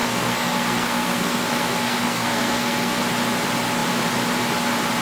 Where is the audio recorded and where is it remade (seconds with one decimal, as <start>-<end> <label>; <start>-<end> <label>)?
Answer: 0.0-3.0 remade; 3.0-5.0 recorded